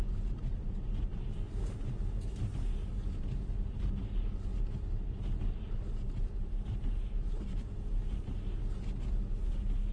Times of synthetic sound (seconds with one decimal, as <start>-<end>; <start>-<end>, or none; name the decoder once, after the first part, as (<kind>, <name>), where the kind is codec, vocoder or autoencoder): none